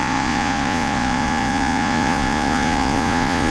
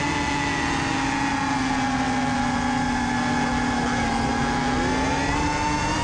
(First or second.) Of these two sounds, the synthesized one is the first